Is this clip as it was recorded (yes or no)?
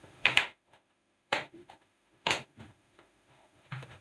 no